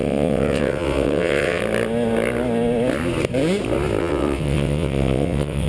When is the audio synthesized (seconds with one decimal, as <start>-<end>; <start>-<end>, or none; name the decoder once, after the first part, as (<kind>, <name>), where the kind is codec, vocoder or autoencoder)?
0.0-1.6 (vocoder, WaveNeXt); 4.0-5.7